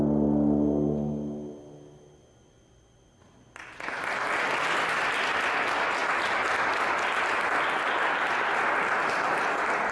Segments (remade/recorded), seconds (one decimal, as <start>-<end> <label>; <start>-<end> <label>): 0.0-9.9 recorded